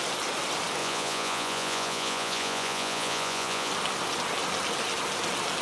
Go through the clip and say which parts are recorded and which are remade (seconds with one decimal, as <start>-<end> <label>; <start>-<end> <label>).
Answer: 0.0-0.8 recorded; 0.8-3.7 remade; 3.7-5.6 recorded